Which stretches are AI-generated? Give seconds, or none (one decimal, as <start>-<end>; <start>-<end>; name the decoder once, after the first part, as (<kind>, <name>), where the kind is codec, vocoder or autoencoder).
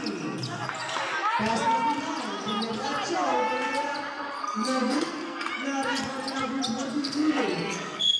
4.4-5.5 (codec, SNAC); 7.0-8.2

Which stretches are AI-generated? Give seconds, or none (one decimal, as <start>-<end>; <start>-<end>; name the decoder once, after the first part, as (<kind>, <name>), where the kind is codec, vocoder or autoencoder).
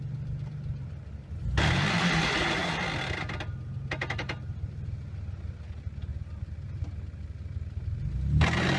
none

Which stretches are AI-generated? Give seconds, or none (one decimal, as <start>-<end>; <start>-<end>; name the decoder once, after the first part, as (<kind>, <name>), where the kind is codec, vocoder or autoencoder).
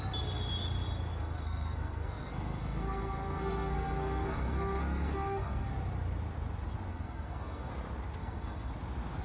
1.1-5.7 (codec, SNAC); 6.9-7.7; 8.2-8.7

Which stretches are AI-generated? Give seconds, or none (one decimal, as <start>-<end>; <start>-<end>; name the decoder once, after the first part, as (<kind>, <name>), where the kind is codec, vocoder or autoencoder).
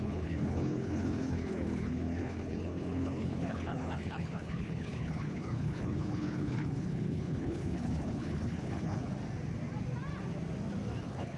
0.0-9.1 (codec, HILCodec); 11.0-11.4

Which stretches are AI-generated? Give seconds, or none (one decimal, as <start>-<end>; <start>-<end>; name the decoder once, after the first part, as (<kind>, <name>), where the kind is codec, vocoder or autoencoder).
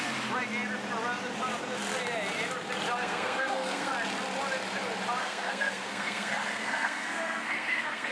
3.0-3.9 (codec, SNAC); 5.2-8.1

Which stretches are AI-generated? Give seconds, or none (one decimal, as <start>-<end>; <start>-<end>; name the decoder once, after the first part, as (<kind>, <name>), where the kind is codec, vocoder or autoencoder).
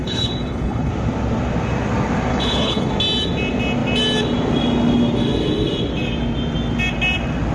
0.0-0.9 (codec, HILCodec); 2.3-2.9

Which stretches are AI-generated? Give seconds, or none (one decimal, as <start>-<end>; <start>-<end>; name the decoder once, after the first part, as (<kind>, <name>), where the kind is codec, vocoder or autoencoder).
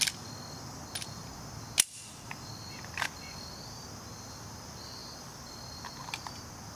none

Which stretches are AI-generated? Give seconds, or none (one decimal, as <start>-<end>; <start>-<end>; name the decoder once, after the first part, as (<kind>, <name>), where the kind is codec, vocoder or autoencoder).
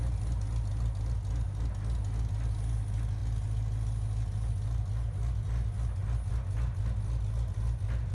none